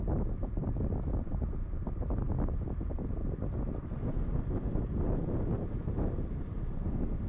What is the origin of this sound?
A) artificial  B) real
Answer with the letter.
B